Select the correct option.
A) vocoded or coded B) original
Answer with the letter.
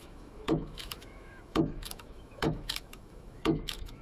A